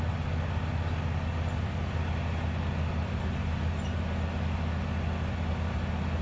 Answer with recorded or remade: recorded